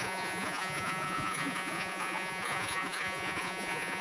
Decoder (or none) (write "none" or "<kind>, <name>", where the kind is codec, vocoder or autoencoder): vocoder, Vocos